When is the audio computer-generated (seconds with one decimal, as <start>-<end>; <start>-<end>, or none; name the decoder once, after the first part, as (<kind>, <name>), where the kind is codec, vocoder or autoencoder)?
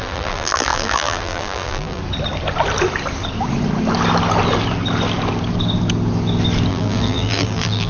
0.0-2.0 (vocoder, BigVGAN v2); 6.7-7.9